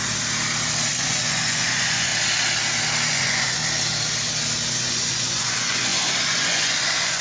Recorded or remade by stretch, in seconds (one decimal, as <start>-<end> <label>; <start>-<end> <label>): 0.0-0.9 recorded; 0.9-2.1 remade; 2.1-3.1 recorded; 3.1-3.6 remade; 3.6-4.7 recorded; 4.7-7.2 remade